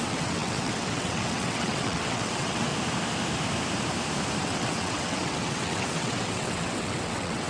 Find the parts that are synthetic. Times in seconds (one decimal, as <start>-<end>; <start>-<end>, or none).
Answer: 0.0-2.7; 4.4-7.5